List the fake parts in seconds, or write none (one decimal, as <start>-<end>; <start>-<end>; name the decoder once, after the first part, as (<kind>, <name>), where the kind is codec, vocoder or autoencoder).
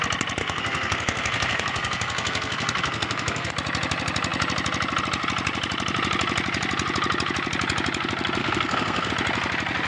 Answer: 0.4-3.5 (codec, SNAC); 8.4-9.1